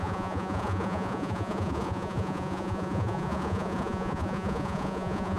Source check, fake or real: fake